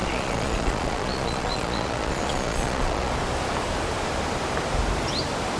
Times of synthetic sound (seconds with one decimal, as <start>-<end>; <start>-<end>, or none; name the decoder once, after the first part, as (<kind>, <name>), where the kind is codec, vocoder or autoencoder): 0.0-3.1 (vocoder, Vocos)